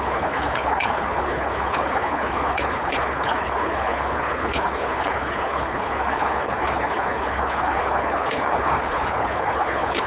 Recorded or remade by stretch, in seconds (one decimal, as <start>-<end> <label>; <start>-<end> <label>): 0.0-10.1 remade